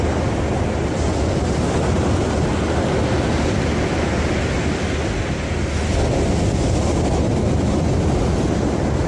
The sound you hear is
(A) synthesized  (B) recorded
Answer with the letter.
B